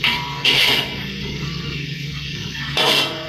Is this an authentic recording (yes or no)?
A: no